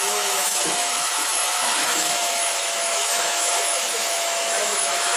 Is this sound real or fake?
fake